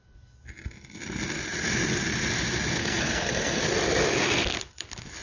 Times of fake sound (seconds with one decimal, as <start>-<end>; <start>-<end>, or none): 2.8-3.6